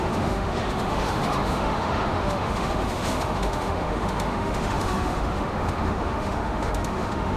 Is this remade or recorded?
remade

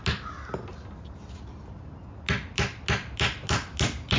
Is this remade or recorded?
recorded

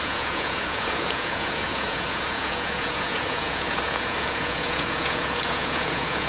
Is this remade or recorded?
remade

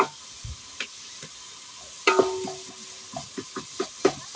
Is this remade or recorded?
recorded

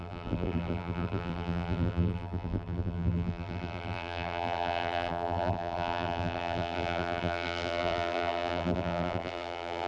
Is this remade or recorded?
remade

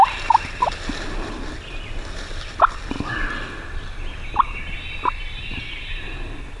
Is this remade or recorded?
recorded